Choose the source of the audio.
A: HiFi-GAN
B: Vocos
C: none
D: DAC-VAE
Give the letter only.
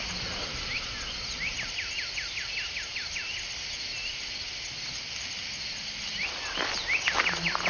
C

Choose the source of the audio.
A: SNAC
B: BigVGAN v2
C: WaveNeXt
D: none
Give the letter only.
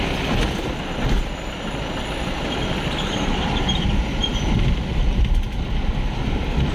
D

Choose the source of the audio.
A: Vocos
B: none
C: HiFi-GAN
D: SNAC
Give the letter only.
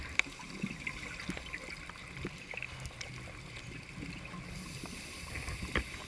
B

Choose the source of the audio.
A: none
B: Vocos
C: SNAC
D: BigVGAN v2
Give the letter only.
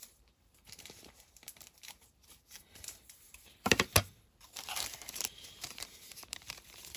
D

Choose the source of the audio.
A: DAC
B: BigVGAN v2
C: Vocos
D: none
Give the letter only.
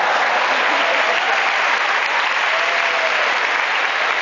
D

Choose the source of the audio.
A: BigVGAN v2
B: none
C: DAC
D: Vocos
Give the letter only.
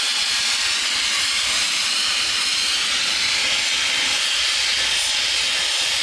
B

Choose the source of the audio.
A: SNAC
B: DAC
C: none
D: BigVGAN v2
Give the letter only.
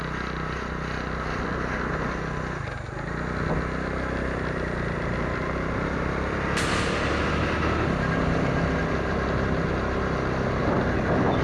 C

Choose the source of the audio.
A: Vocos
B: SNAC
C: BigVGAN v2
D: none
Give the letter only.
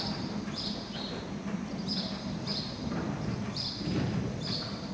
C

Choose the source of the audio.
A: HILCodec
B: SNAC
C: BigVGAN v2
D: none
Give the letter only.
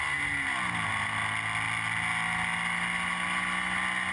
D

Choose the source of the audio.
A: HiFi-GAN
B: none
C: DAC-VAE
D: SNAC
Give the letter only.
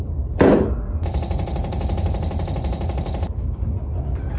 B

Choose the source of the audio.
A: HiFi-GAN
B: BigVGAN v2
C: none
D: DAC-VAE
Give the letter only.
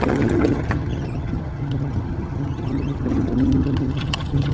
A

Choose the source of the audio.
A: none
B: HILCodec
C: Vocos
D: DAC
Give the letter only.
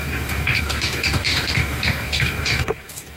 D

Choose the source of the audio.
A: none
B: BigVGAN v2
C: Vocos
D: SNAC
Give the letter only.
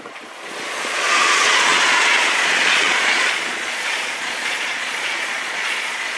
C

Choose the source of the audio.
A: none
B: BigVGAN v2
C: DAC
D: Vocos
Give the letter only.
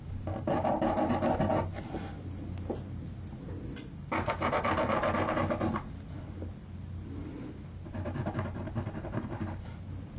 A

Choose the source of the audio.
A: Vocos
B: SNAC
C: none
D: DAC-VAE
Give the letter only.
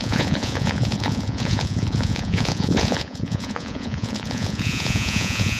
A